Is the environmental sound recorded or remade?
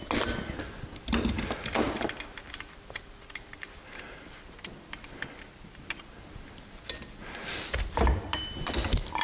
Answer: recorded